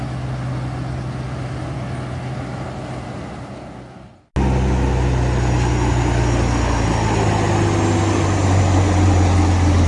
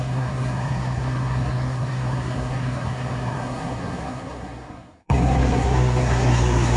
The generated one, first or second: second